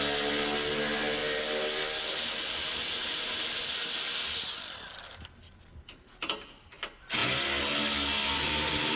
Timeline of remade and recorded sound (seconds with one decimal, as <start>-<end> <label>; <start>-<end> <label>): 0.0-9.0 recorded